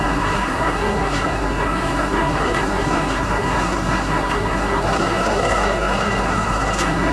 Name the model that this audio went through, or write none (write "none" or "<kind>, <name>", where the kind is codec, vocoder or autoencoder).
codec, SNAC